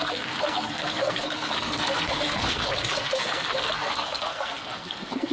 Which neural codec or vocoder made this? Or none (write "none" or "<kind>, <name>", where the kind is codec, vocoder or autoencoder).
codec, SNAC